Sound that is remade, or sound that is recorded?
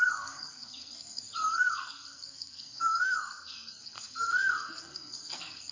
remade